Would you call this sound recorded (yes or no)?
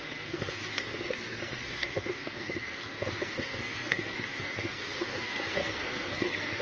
no